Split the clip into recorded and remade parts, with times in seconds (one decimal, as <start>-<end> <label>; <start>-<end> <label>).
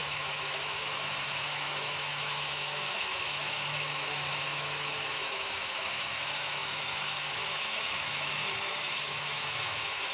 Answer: 0.0-10.1 remade